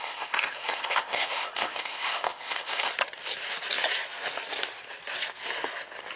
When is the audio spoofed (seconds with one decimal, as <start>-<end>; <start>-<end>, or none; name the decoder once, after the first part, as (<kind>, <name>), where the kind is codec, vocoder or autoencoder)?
0.0-2.9 (codec, ZipCodec)